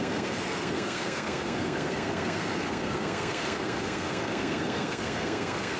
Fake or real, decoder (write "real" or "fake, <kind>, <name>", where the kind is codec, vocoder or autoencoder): fake, codec, SNAC